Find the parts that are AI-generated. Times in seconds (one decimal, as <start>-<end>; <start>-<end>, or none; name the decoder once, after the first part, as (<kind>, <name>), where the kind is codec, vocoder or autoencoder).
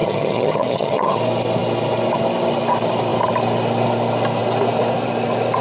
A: 0.0-1.2 (vocoder, HiFi-GAN)